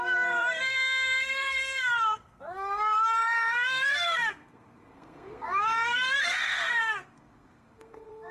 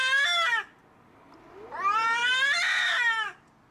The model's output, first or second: first